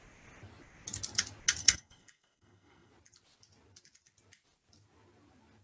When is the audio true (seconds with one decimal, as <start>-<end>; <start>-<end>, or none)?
0.0-1.6; 2.9-5.6